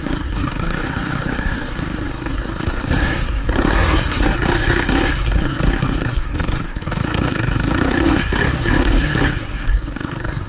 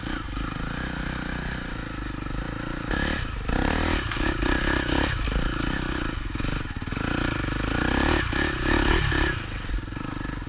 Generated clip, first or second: first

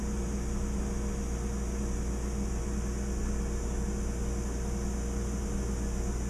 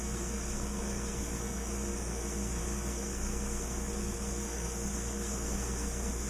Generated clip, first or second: second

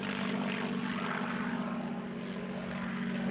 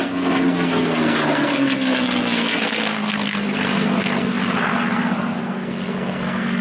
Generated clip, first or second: second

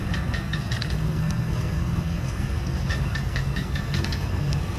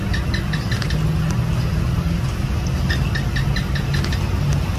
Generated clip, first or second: first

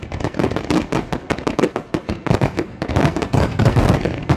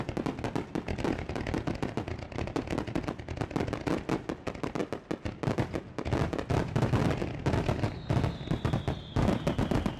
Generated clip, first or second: first